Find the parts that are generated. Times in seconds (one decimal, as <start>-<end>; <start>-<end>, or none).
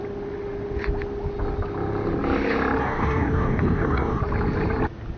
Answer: 2.8-4.2